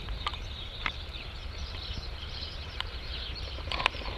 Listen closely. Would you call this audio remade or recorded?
remade